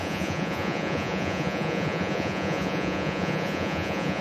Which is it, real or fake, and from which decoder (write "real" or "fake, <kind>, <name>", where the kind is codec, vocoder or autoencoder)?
fake, vocoder, Vocos